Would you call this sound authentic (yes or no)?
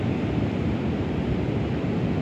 yes